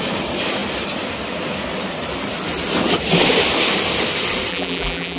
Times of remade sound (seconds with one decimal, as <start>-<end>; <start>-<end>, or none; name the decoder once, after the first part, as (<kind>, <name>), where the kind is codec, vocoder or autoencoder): 4.5-5.2 (vocoder, BigVGAN v2)